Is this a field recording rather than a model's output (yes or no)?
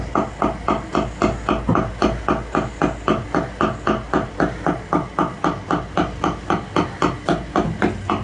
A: yes